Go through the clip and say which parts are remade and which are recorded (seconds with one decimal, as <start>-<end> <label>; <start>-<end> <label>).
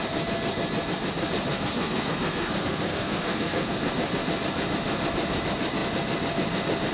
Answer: 0.0-1.5 recorded; 1.5-3.8 remade; 3.8-6.9 recorded